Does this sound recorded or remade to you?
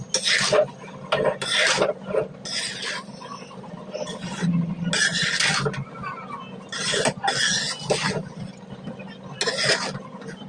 recorded